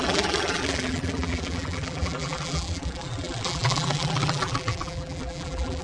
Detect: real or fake fake